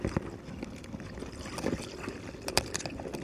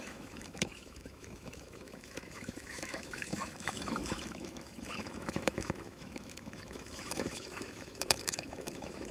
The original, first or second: first